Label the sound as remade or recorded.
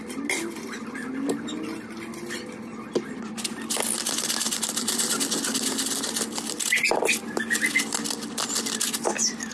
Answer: recorded